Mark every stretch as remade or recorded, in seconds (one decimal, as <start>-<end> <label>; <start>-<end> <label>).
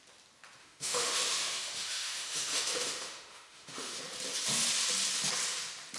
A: 0.0-0.6 recorded; 0.6-4.0 remade; 4.0-6.0 recorded